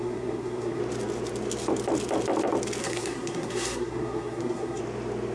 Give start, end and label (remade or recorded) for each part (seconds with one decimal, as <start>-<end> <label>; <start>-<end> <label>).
0.0-0.8 remade; 0.8-2.8 recorded; 2.8-4.8 remade; 4.8-5.3 recorded